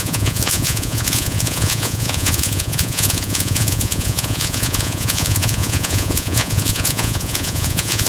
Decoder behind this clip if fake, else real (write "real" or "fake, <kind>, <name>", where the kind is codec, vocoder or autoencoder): fake, vocoder, Vocos